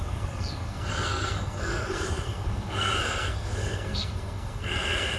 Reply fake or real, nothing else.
fake